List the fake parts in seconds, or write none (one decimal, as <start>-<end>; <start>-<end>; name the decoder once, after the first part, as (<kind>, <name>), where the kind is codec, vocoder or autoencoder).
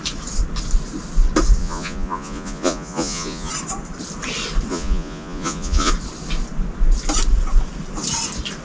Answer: 1.6-3.5 (vocoder, Vocos); 4.7-5.9